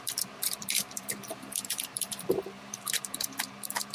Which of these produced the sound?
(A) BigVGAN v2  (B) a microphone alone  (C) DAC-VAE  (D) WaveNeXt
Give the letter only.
A